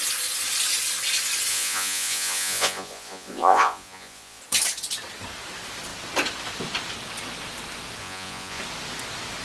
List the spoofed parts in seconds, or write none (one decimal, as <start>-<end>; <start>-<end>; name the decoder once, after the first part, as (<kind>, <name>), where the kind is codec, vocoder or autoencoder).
1.5-4.4 (vocoder, Vocos); 8.0-8.6